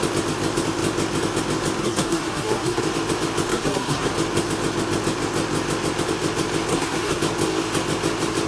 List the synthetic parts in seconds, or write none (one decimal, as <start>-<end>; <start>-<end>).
1.8-2.8; 3.5-4.1; 6.7-7.2

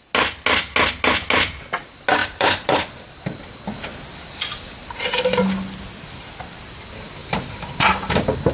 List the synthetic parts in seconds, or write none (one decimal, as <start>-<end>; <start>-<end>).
2.2-2.9; 7.2-8.1